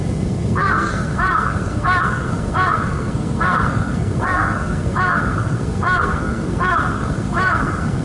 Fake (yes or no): yes